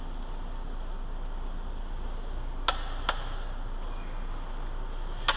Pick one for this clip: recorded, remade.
recorded